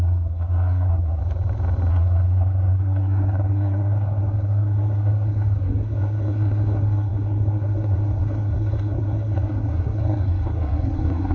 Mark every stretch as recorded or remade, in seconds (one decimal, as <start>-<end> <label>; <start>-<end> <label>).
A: 0.0-1.2 remade; 1.2-1.9 recorded; 1.9-11.3 remade